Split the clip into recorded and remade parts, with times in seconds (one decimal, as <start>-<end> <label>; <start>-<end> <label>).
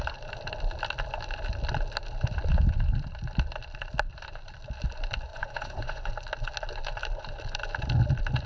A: 0.0-5.3 recorded; 5.3-6.1 remade; 6.1-8.5 recorded